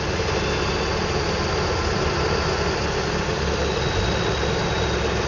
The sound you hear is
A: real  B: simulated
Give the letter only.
A